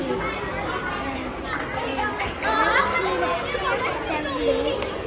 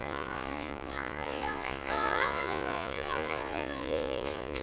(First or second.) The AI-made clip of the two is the second